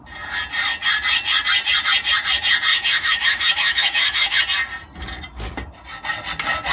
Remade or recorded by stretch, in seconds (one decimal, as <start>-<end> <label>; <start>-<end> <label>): 0.0-2.7 recorded; 2.7-4.4 remade; 4.4-6.7 recorded